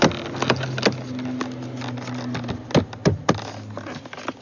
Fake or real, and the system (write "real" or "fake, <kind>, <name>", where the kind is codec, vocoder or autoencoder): real